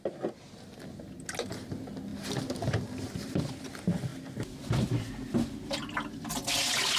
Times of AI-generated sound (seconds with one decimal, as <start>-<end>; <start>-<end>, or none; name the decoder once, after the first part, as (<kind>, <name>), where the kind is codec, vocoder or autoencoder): none